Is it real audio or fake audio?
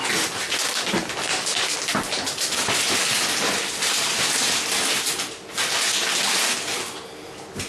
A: real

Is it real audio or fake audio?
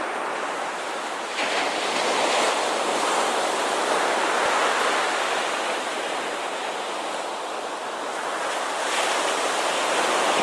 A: real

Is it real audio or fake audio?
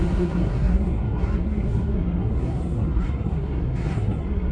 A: fake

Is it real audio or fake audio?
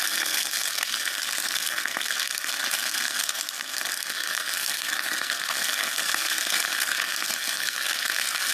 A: fake